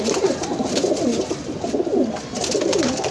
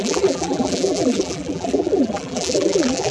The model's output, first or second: second